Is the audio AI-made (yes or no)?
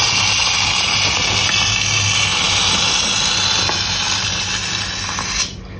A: no